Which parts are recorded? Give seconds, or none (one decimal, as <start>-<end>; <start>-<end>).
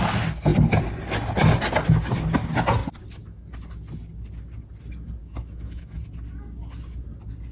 0.0-5.2; 6.0-7.5